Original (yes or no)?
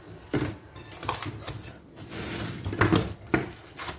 yes